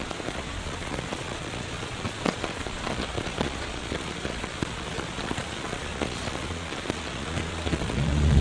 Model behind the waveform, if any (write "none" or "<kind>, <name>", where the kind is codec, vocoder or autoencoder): vocoder, Vocos